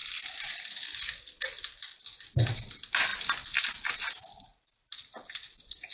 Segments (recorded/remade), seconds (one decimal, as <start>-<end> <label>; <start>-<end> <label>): 0.0-0.7 remade; 0.7-4.5 recorded; 4.5-5.2 remade; 5.2-5.9 recorded